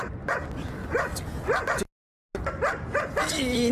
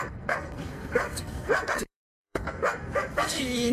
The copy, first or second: second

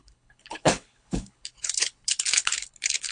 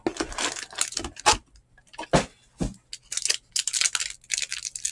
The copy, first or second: first